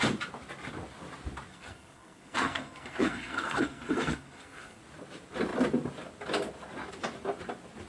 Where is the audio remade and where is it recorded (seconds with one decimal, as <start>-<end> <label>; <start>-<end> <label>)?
0.0-1.5 recorded; 1.5-4.8 remade; 4.8-7.9 recorded